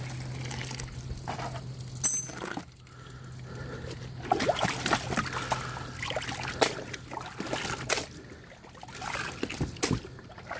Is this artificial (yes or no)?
no